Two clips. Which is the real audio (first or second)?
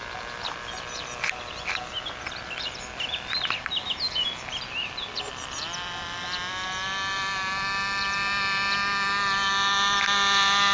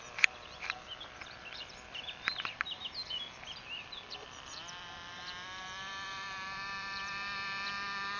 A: first